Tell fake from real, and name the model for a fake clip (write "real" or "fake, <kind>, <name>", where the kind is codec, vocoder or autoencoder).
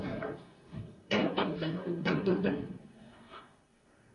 fake, codec, SNAC